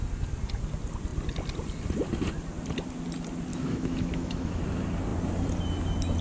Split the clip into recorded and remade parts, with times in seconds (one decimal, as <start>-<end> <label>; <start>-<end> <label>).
0.0-3.5 recorded; 3.5-4.6 remade; 4.6-6.2 recorded